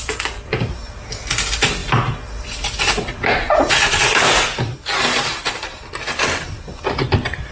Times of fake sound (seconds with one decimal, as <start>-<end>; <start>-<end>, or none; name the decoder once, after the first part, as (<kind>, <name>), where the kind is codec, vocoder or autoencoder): none